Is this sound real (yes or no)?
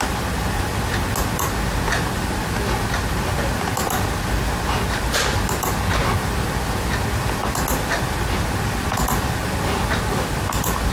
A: yes